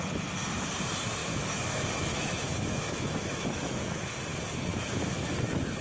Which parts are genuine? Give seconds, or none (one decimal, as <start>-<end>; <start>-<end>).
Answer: 0.0-1.2; 4.0-4.7; 5.2-5.8